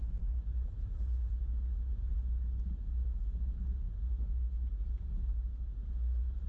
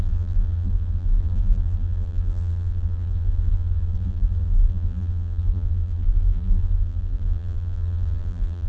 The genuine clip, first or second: first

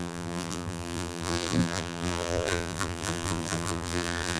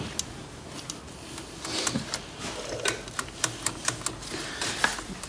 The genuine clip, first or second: second